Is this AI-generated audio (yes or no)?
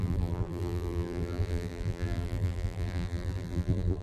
yes